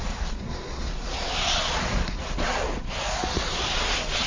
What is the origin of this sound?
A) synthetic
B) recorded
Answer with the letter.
A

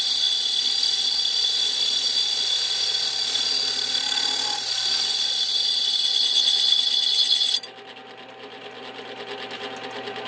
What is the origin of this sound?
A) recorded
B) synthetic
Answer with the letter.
A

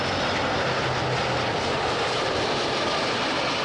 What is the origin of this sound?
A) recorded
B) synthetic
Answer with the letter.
A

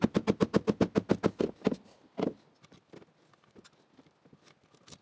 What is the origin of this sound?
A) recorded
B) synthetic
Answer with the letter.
A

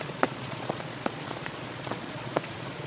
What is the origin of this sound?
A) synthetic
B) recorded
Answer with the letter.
A